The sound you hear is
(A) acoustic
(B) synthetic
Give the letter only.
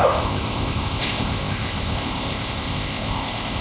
B